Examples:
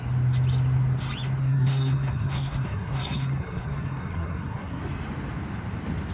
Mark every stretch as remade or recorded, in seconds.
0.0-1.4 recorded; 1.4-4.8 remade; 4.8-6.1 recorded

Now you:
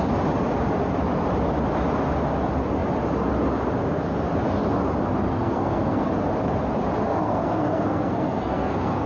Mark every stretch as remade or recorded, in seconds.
0.0-5.3 recorded; 5.3-6.1 remade; 6.1-7.1 recorded; 7.1-9.1 remade